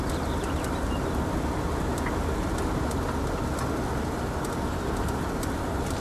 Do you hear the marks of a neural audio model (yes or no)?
no